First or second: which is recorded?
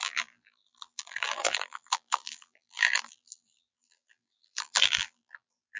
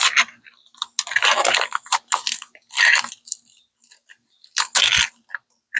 second